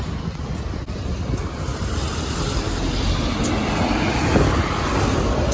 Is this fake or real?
real